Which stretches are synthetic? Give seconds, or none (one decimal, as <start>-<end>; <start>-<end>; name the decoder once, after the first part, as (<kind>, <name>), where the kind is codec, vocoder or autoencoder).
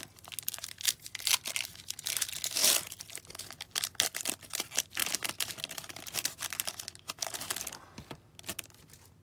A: 2.6-4.0 (vocoder, BigVGAN v2); 5.0-6.3